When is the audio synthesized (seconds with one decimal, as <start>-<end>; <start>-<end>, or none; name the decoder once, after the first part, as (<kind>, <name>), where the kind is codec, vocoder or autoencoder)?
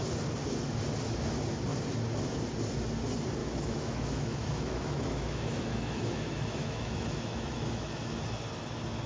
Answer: 3.4-8.2 (autoencoder, DAC-VAE)